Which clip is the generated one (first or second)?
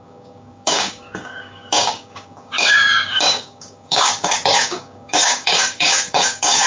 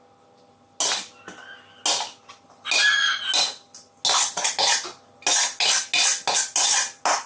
first